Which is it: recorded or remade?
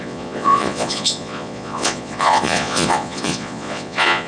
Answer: remade